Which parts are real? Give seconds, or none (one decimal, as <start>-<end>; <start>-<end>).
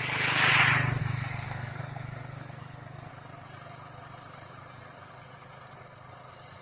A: 0.0-1.0; 3.1-6.6